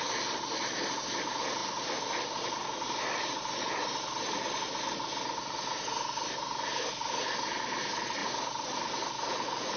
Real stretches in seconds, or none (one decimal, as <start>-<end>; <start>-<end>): 0.0-1.6; 3.3-8.2; 8.7-9.8